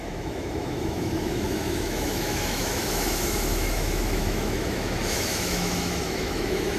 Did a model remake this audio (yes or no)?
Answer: yes